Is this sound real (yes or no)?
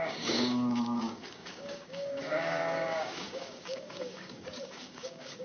no